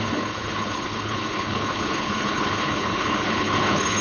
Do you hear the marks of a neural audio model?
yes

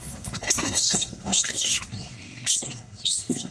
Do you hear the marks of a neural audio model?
yes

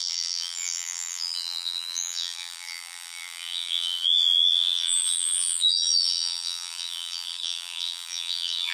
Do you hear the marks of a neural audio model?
yes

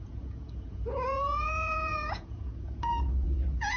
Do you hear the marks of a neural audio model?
yes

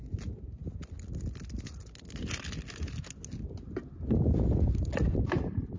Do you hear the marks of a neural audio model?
no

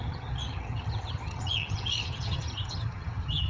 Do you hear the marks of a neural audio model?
yes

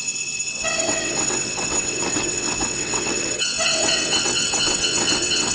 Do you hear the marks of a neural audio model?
yes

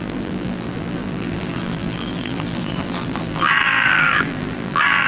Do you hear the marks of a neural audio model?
yes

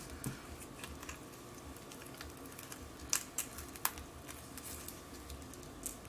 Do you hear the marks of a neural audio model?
no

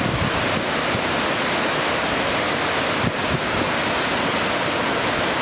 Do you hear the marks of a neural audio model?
no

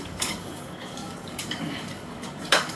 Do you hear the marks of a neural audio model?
yes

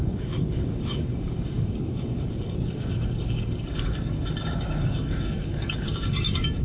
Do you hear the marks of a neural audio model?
yes